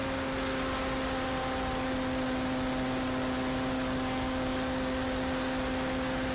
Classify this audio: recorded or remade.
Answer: recorded